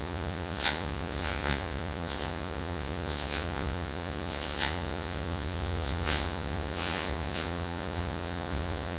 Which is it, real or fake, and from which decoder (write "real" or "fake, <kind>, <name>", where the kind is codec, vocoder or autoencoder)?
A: fake, vocoder, Vocos